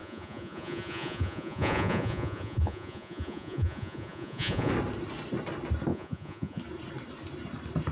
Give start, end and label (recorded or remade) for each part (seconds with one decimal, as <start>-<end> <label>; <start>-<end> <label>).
0.0-4.7 remade; 4.7-5.9 recorded; 5.9-6.6 remade; 6.6-7.9 recorded